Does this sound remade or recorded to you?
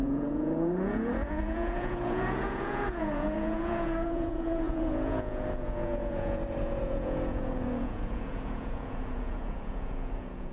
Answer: remade